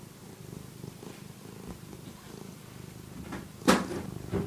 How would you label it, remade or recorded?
recorded